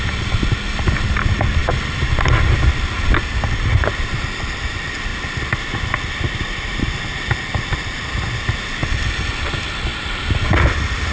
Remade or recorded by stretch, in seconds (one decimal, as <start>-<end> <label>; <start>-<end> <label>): 0.0-11.1 recorded